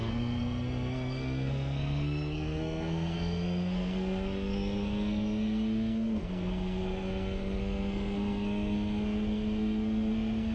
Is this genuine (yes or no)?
no